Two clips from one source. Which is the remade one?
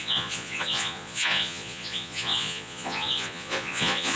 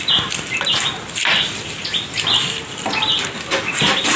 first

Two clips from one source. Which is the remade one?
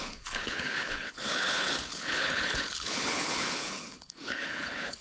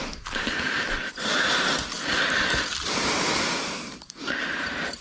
first